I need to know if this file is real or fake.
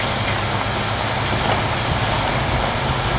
real